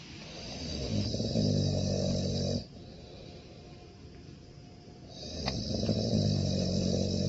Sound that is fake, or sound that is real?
real